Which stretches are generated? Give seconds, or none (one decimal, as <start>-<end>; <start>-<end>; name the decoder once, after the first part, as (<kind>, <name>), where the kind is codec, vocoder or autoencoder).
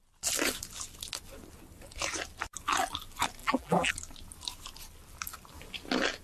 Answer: 3.4-3.9 (vocoder, BigVGAN v2)